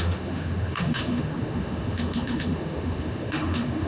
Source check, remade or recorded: remade